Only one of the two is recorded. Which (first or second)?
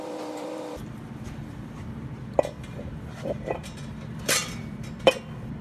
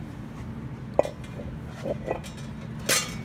second